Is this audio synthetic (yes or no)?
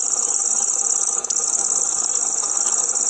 yes